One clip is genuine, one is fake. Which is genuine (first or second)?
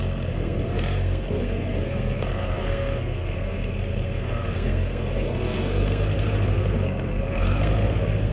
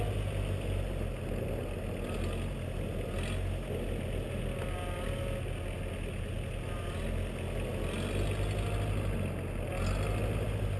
second